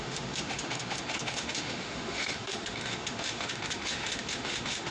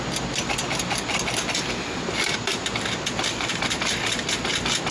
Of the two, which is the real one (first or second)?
second